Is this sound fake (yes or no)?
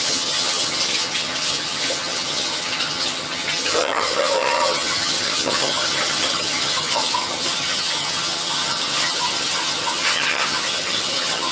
yes